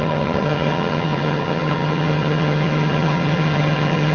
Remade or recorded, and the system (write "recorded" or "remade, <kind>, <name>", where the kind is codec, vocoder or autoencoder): remade, vocoder, HiFi-GAN